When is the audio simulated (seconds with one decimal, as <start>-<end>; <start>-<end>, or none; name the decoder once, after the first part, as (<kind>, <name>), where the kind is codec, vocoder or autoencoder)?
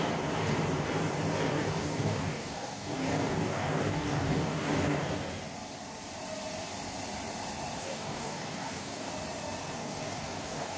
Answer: 1.5-5.1 (codec, DAC); 7.8-9.1; 9.8-10.8